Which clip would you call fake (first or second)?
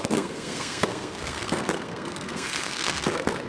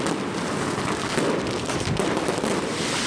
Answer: first